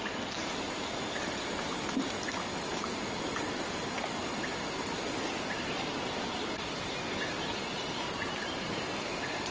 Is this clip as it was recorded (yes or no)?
yes